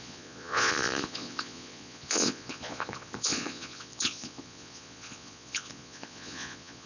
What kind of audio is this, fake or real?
fake